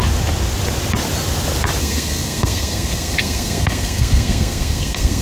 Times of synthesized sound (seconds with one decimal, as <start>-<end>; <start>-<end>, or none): 1.8-5.2